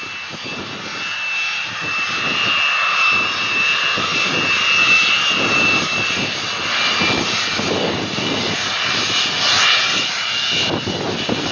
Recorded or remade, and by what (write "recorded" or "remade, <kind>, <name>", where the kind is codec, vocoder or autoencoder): recorded